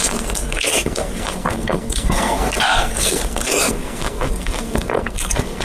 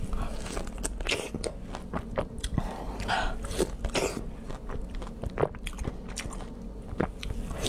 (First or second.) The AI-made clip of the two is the first